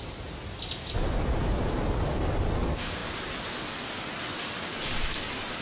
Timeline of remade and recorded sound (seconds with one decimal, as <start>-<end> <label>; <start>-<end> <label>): 0.0-3.0 recorded; 3.0-5.1 remade; 5.1-5.6 recorded